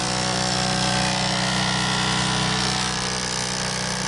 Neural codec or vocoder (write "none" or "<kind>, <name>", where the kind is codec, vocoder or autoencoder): none